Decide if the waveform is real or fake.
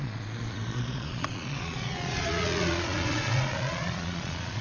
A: fake